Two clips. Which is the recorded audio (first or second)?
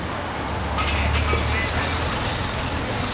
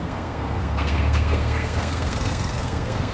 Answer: first